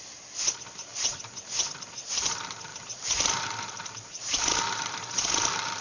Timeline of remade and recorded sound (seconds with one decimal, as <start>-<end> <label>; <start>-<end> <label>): 0.0-2.7 recorded; 2.7-4.4 remade; 4.4-5.8 recorded